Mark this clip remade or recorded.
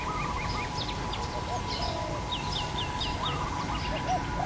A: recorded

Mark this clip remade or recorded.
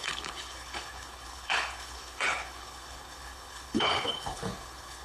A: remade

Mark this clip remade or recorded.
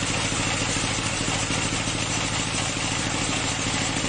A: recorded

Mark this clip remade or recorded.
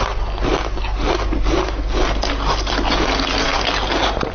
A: recorded